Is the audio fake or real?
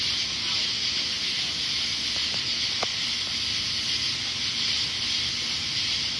real